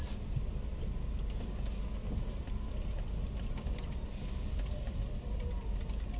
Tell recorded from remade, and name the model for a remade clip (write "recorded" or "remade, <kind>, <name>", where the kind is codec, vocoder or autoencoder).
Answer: recorded